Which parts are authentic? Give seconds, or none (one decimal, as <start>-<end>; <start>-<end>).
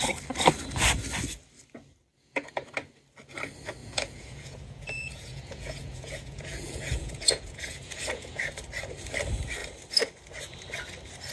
0.0-2.1; 2.7-3.8; 8.5-11.3